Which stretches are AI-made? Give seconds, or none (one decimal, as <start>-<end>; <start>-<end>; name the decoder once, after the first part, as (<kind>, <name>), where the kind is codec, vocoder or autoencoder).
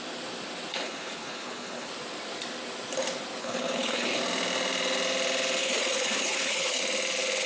0.7-1.9 (codec, HILCodec); 3.4-4.2; 5.6-6.8